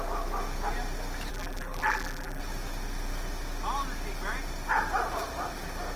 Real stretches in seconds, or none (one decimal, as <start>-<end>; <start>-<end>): 0.0-1.3; 2.4-6.0